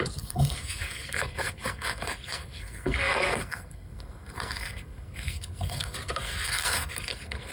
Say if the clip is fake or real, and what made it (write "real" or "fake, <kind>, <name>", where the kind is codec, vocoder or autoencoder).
fake, codec, SNAC